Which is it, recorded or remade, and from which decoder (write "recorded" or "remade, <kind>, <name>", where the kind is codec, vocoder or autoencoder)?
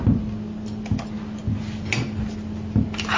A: recorded